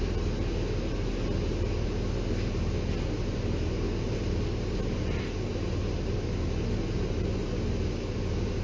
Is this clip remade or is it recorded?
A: recorded